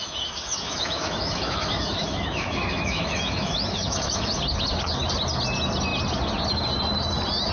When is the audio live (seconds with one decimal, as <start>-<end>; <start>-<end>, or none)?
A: 4.3-7.5